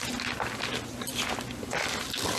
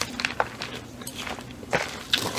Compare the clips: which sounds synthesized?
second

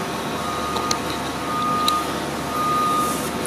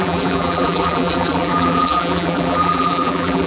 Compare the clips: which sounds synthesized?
second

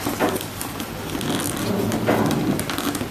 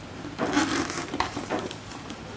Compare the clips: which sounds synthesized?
second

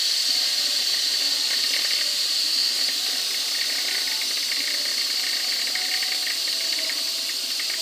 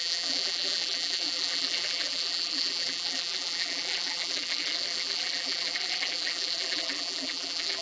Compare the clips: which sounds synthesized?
second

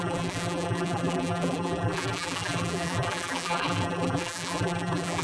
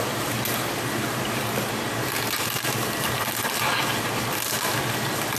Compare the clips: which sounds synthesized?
first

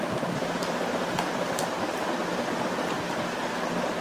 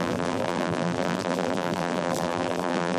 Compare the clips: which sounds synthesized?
second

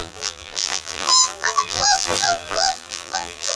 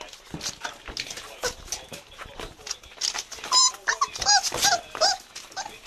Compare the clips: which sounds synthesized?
first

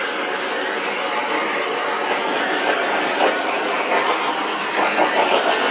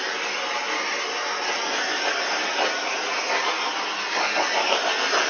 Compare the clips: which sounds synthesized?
first